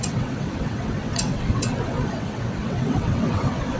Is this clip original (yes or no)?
no